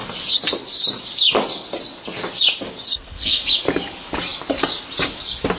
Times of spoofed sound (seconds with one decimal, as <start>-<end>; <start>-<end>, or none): 2.9-3.4